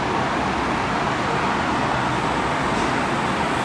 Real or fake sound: real